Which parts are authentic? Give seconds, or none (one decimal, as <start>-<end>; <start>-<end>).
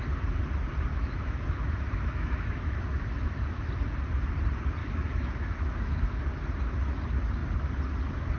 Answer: 0.0-0.9; 3.7-4.8; 6.2-8.4